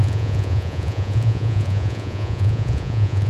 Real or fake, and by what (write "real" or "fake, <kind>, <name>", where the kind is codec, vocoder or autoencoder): fake, vocoder, Vocos